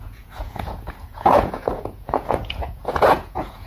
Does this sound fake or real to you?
fake